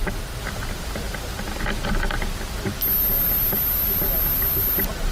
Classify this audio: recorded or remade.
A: recorded